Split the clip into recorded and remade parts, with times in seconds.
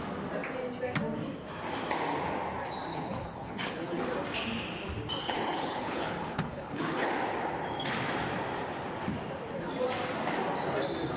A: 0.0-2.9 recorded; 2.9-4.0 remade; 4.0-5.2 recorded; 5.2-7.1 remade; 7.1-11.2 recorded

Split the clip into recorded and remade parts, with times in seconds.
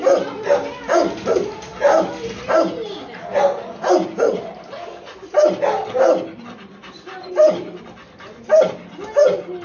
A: 0.0-9.6 recorded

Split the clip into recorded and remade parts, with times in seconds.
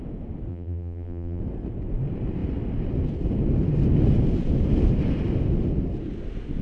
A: 0.0-0.5 recorded; 0.5-1.4 remade; 1.4-6.6 recorded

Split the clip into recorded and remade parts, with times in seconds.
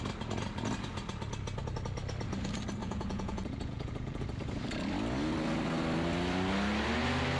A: 0.0-2.8 recorded; 2.8-4.2 remade; 4.2-7.4 recorded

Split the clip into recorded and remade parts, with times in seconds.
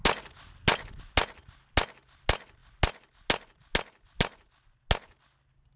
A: 0.0-5.8 recorded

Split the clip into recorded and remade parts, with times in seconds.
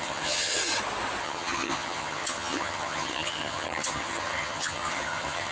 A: 0.0-0.6 remade; 0.6-1.2 recorded; 1.2-5.5 remade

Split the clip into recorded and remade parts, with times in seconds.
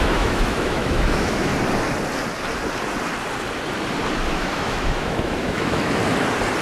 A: 0.0-1.5 remade; 1.5-4.3 recorded; 4.3-6.0 remade; 6.0-6.6 recorded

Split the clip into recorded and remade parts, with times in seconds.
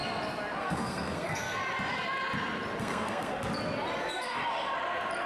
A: 0.0-0.6 recorded; 0.6-1.6 remade; 1.6-2.8 recorded; 2.8-3.3 remade; 3.3-4.0 recorded; 4.0-4.4 remade; 4.4-5.3 recorded